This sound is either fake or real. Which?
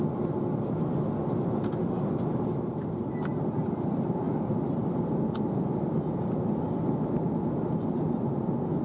real